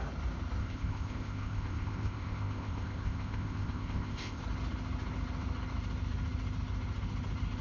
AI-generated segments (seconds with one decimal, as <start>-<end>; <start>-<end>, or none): 0.6-4.4